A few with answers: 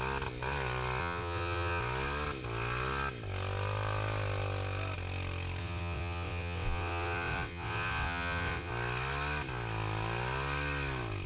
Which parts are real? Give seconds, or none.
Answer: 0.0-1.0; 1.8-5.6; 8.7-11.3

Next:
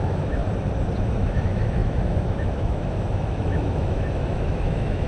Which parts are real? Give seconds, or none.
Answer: 0.4-1.0

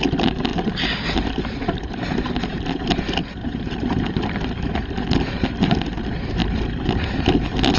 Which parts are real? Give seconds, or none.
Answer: 0.0-0.5; 2.3-3.2; 4.3-7.8

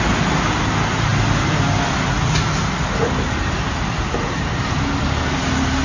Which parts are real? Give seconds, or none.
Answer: 0.0-5.8